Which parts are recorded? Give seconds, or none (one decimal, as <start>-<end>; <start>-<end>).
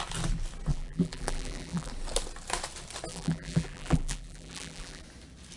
0.0-0.7; 1.9-3.1; 5.0-5.6